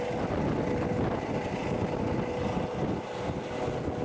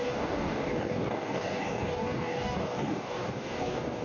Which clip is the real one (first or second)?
first